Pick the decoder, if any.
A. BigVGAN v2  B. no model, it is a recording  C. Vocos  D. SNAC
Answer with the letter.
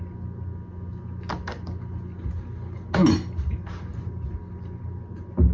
B